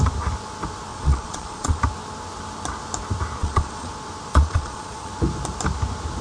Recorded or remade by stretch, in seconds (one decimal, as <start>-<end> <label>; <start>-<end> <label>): 0.0-0.9 recorded; 0.9-1.8 remade; 1.8-3.4 recorded; 3.4-3.9 remade; 3.9-4.3 recorded; 4.3-5.1 remade; 5.1-6.2 recorded